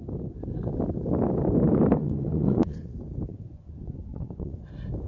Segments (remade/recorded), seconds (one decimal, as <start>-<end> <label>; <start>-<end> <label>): 0.0-2.0 recorded; 2.0-2.9 remade; 2.9-3.3 recorded; 3.3-4.6 remade; 4.6-5.1 recorded